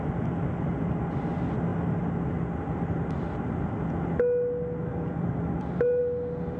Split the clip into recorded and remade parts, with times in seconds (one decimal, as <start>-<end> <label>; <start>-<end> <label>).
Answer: 0.0-1.7 recorded; 1.7-3.8 remade; 3.8-4.9 recorded; 4.9-6.0 remade; 6.0-6.6 recorded